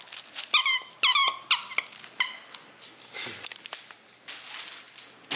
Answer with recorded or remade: recorded